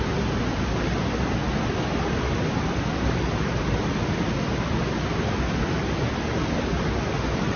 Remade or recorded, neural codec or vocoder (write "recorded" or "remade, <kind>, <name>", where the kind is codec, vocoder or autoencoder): recorded